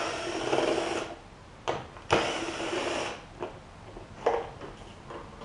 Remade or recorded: recorded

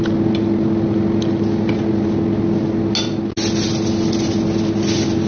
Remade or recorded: recorded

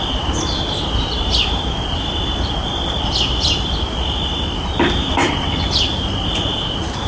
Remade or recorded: recorded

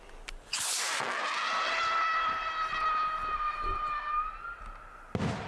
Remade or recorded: recorded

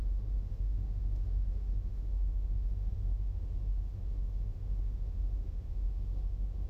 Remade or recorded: remade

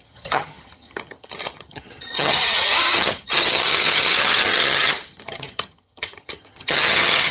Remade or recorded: remade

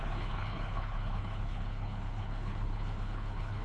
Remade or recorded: remade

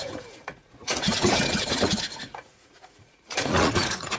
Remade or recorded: remade